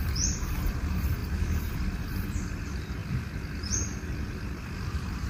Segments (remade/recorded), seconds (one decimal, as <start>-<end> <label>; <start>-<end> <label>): 0.0-3.0 remade; 3.0-4.2 recorded; 4.2-5.3 remade